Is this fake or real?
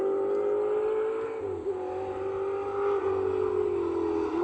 real